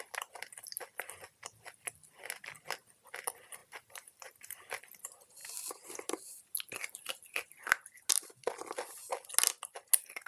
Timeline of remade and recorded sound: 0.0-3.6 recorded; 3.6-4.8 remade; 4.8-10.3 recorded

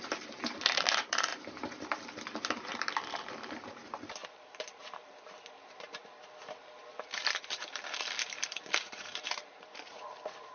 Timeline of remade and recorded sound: 0.0-1.3 remade; 1.3-2.7 recorded; 2.7-6.0 remade; 6.0-6.9 recorded; 6.9-10.5 remade

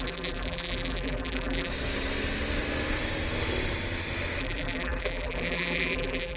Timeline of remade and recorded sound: 0.0-1.7 remade; 1.7-4.4 recorded; 4.4-6.4 remade